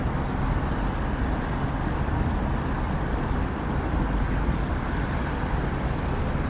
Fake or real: real